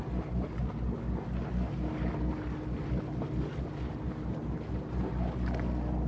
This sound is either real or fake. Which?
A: real